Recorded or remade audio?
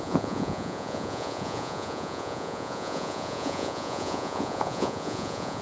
remade